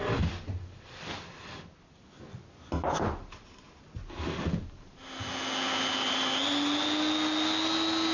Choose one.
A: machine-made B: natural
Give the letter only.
B